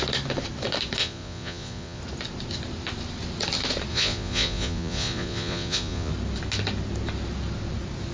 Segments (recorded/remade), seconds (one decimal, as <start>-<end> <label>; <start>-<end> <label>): 0.0-1.0 recorded; 1.0-2.0 remade; 2.0-3.9 recorded; 3.9-6.1 remade; 6.1-8.1 recorded